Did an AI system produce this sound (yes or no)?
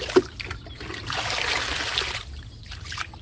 no